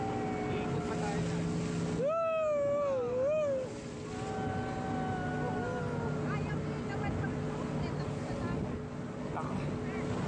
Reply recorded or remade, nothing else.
recorded